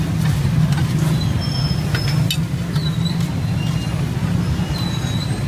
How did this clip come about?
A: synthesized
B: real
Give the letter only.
B